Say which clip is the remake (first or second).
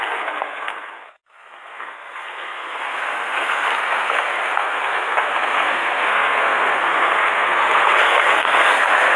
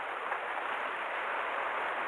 first